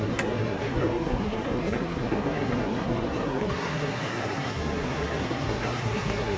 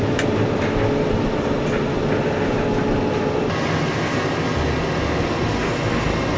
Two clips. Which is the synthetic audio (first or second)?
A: first